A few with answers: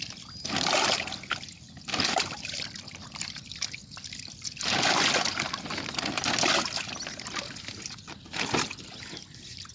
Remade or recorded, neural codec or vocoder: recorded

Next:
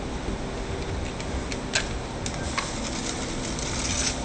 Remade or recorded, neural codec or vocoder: recorded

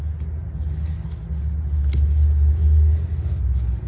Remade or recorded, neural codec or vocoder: recorded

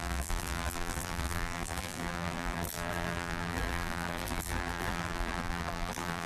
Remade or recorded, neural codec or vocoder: remade, vocoder, BigVGAN v2